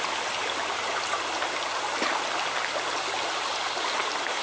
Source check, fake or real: real